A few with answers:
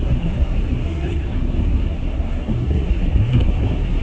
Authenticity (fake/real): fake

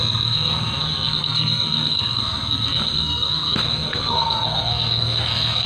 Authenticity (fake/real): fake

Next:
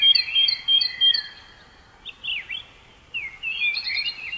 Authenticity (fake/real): real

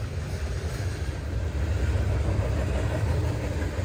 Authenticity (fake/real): real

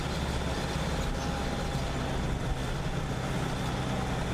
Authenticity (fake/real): real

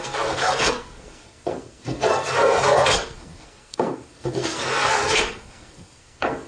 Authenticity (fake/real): fake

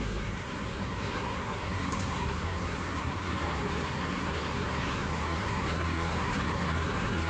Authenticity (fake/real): fake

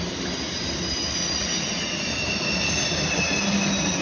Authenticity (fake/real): real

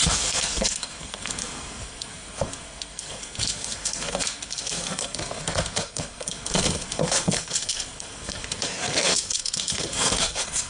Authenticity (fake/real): fake